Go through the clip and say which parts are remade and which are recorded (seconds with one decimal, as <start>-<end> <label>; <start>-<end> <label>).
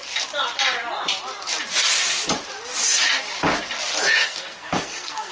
0.0-4.2 recorded; 4.2-5.3 remade